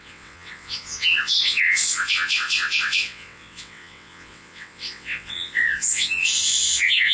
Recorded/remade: remade